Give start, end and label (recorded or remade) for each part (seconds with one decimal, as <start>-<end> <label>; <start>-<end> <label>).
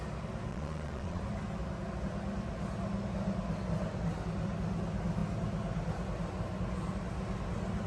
0.0-0.5 recorded; 0.5-1.2 remade; 1.2-7.9 recorded